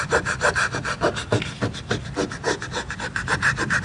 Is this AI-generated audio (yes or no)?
no